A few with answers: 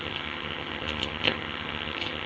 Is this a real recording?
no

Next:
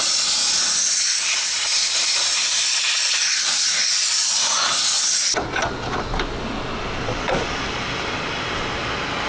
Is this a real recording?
yes